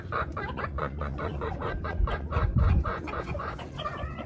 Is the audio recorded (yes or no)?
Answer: no